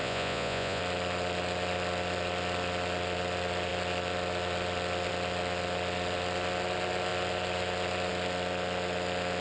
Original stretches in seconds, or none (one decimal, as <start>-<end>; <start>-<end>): 0.8-9.4